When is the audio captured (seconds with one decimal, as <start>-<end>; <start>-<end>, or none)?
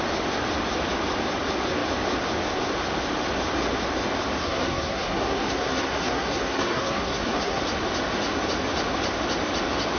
0.0-4.4; 7.6-10.0